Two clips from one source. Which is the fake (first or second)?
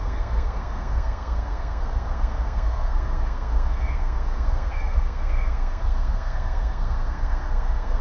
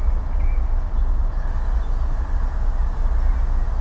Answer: first